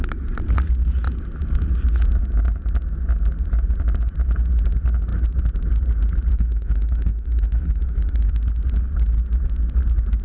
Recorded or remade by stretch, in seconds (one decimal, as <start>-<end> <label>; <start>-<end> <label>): 0.0-6.3 recorded; 6.3-8.3 remade; 8.3-10.2 recorded